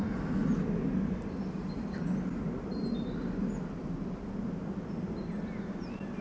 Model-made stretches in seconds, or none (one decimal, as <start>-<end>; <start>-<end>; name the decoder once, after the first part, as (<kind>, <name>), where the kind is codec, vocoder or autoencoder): none